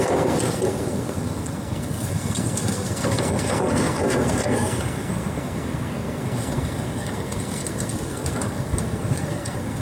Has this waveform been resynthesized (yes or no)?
yes